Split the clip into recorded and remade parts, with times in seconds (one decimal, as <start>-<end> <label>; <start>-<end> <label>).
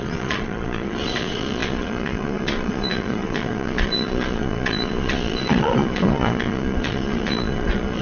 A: 0.0-8.0 remade